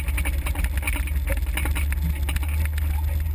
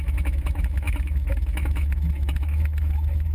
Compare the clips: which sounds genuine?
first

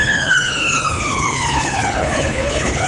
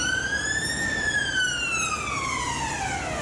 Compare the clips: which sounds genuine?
second